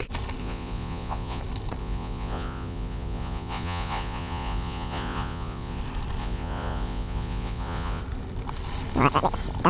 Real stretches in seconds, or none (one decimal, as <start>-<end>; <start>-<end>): 0.0-0.4; 1.4-1.8; 5.8-6.2; 8.0-9.7